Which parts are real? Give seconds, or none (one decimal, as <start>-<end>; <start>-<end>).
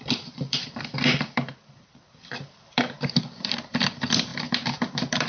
none